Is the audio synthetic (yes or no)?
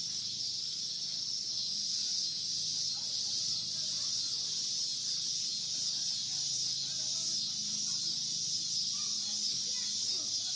no